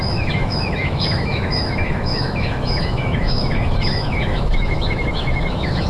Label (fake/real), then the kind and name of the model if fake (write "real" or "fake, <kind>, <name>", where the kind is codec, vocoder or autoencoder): fake, autoencoder, DAC-VAE